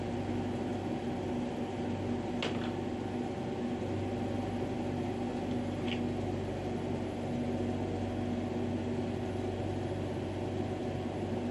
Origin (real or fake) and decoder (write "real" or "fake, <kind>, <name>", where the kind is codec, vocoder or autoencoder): real